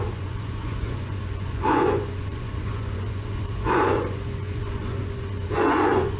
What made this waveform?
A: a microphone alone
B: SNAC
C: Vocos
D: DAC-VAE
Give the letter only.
C